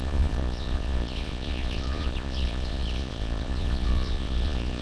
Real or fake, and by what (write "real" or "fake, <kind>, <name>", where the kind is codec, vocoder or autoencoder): fake, vocoder, Vocos